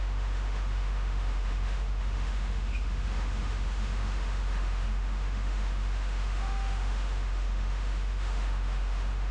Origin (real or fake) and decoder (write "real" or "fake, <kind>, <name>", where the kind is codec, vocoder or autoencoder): fake, autoencoder, DAC-VAE